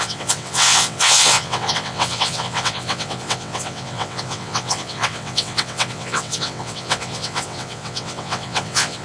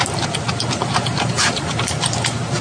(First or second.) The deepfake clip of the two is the first